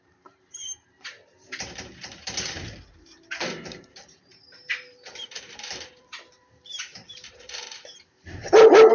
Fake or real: fake